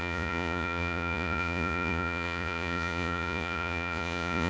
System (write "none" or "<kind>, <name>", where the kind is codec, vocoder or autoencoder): vocoder, Vocos